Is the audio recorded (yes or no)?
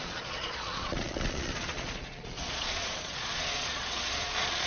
no